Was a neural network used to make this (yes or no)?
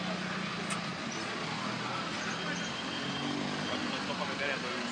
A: no